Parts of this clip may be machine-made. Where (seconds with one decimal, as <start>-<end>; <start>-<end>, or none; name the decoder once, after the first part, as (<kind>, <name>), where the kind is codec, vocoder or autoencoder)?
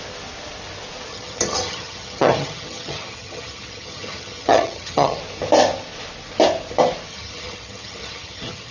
1.1-5.2 (vocoder, HiFi-GAN); 7.1-8.7